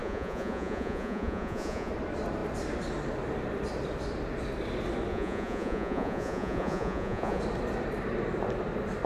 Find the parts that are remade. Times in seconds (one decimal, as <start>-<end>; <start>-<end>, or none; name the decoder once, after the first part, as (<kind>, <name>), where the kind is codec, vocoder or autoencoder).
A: 0.0-1.9 (vocoder, Vocos); 5.1-7.4